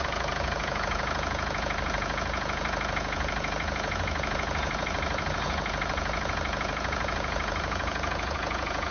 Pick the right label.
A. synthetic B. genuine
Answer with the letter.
A